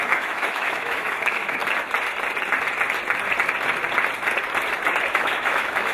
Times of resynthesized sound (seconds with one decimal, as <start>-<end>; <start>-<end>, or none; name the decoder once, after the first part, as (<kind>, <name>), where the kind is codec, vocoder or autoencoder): 0.0-1.6 (autoencoder, DAC-VAE); 5.1-5.9